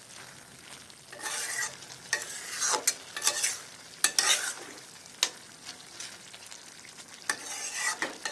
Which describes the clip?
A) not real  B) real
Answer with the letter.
B